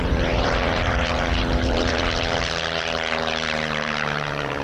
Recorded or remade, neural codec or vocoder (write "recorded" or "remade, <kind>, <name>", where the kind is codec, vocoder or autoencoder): remade, vocoder, BigVGAN v2